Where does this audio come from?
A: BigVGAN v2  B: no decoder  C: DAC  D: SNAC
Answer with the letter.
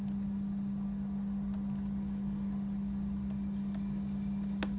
B